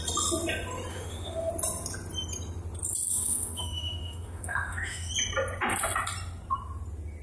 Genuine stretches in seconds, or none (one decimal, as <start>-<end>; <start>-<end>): 0.0-0.9; 1.5-3.1; 5.1-7.2